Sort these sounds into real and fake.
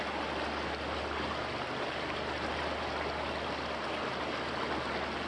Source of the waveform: real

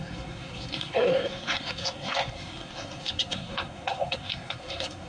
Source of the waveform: fake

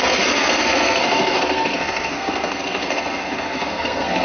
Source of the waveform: fake